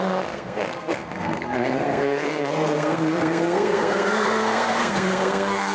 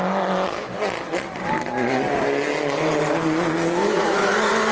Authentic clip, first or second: second